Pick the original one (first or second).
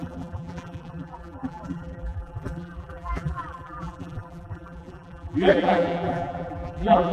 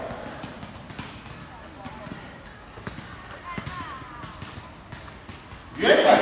second